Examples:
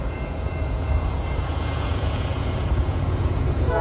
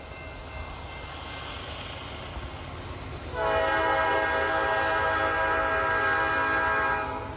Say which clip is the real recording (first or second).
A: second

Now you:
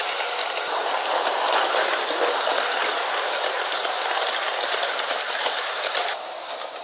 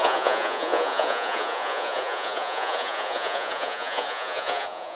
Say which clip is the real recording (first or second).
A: first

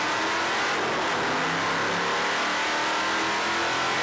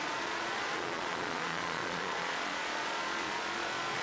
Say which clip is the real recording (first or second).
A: first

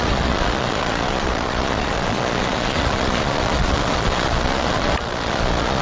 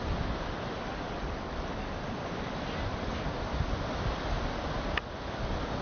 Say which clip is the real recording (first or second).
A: second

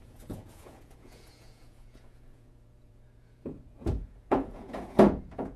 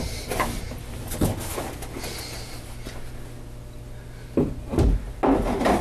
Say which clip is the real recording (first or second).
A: second